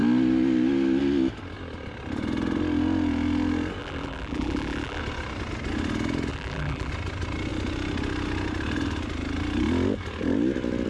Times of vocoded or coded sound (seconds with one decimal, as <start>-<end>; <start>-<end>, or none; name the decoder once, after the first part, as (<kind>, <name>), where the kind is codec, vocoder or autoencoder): 3.8-5.0 (vocoder, BigVGAN v2); 6.3-6.9